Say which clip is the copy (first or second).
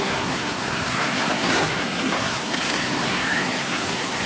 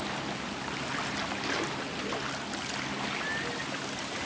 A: first